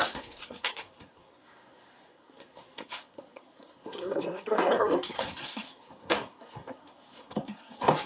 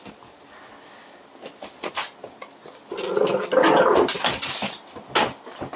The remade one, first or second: first